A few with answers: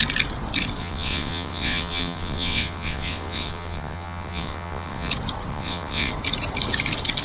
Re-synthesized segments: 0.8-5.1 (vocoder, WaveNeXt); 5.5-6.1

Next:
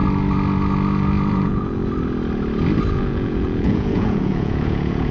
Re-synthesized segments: 1.3-1.8 (vocoder, Vocos); 2.9-5.1

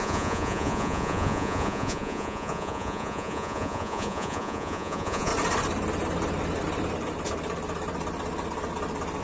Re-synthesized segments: 0.0-5.3 (vocoder, Vocos)

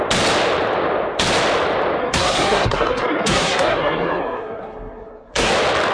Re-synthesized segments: 2.0-5.5 (codec, SNAC)

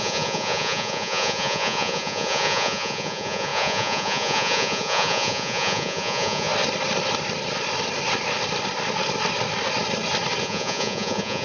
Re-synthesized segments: 0.0-6.5 (vocoder, Vocos); 10.4-11.4